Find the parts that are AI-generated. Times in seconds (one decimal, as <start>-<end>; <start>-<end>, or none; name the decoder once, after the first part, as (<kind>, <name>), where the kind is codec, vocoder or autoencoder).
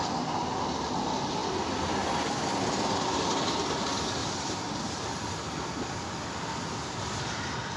none